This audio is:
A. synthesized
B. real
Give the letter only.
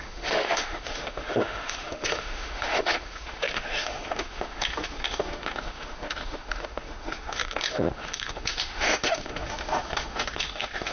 A